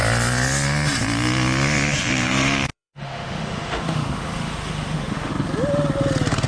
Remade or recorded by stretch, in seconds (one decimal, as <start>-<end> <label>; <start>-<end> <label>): 0.0-2.7 recorded; 2.7-5.3 remade; 5.3-6.5 recorded